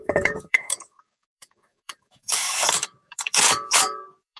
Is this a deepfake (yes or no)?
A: yes